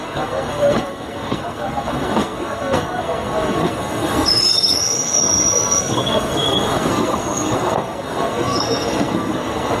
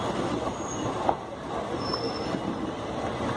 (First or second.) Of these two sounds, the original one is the second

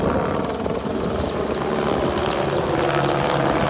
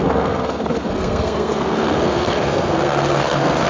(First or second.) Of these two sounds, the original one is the first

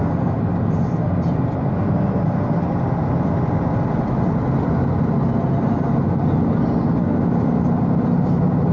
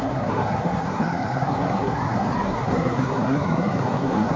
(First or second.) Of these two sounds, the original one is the first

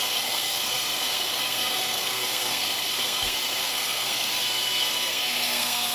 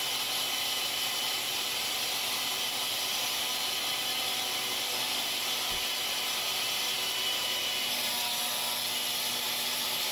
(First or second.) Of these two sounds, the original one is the second